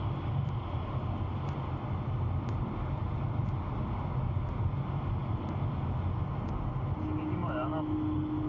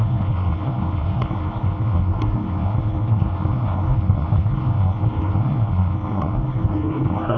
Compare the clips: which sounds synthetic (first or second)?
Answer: second